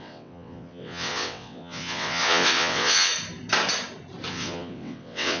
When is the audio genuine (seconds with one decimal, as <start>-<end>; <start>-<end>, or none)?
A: 3.1-4.3

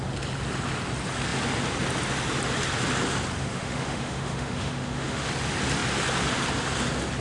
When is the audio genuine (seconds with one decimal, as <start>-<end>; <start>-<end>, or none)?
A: 0.0-3.4; 5.3-7.2

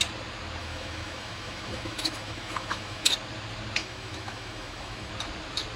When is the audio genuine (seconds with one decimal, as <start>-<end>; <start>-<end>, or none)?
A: 0.0-0.6; 3.1-3.8; 5.1-5.8

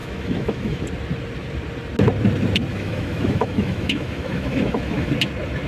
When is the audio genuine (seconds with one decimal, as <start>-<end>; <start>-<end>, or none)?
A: 0.8-2.7; 5.1-5.7

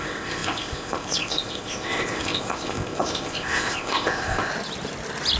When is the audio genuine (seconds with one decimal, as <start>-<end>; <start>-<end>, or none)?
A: 4.5-5.4

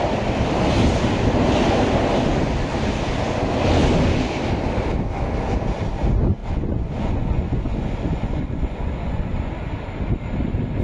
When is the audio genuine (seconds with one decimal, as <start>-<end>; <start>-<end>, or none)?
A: 0.0-6.4; 9.5-10.8